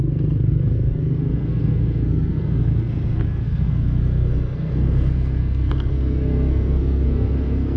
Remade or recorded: remade